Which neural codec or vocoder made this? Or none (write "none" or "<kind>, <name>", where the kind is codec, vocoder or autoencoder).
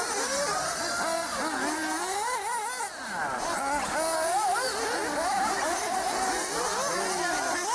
none